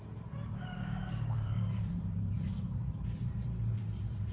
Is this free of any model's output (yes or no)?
no